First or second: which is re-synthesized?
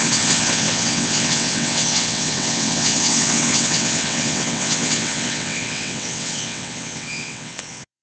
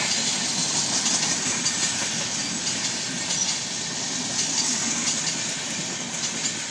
first